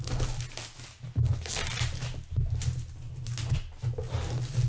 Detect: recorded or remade recorded